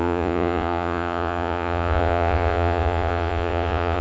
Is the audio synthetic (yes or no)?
yes